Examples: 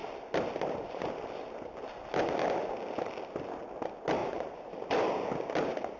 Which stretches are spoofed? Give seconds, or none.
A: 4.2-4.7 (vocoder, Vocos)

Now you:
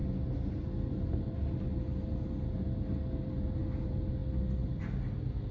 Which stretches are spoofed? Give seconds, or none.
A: none

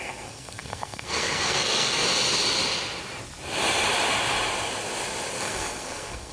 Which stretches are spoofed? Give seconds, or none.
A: 0.0-2.0 (codec, SNAC); 5.4-6.3